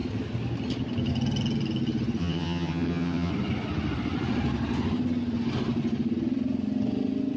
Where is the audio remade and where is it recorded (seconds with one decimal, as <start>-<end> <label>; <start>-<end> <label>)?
0.0-2.2 recorded; 2.2-3.3 remade; 3.3-7.4 recorded